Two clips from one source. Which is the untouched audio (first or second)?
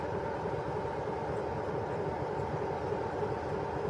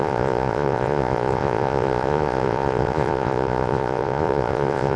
first